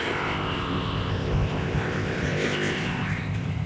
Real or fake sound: fake